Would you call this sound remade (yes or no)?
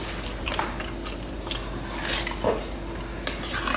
no